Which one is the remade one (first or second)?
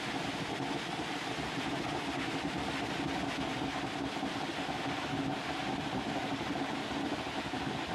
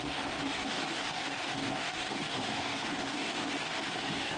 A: second